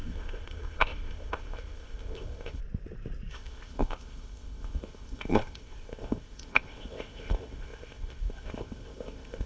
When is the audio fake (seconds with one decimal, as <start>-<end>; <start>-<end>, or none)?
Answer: 0.0-2.6; 3.3-9.5